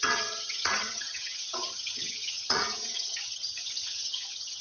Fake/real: fake